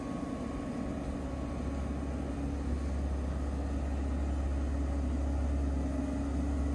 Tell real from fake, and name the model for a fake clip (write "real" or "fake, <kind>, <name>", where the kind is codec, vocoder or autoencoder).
real